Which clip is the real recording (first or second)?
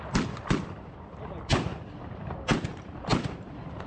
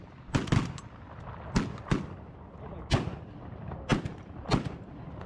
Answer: second